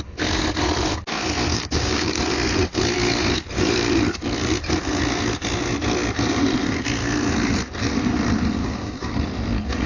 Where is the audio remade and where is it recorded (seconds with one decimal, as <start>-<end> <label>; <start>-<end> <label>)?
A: 0.0-1.5 recorded; 1.5-2.2 remade; 2.2-8.6 recorded; 8.6-9.1 remade; 9.1-9.9 recorded